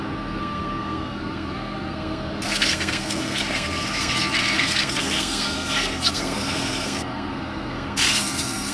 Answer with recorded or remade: remade